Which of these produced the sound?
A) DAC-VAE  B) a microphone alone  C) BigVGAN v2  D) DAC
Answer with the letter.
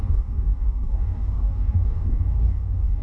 D